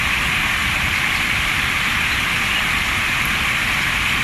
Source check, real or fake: real